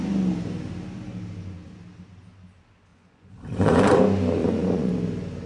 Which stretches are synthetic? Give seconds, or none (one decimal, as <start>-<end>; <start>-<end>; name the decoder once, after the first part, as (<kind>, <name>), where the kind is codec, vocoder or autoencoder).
2.9-4.0 (vocoder, Vocos); 4.4-4.9